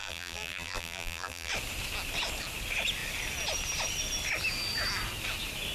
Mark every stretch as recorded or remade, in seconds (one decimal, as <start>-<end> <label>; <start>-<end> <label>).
0.0-1.5 remade; 1.5-5.7 recorded